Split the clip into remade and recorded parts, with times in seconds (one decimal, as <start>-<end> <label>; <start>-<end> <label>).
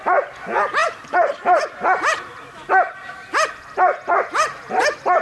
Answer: 0.0-0.8 recorded; 0.8-1.7 remade; 1.7-2.3 recorded; 2.3-2.9 remade; 2.9-4.3 recorded; 4.3-4.8 remade; 4.8-5.2 recorded